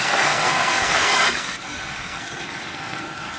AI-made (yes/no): yes